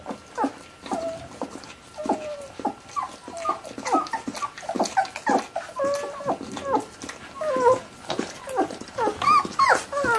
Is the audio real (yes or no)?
yes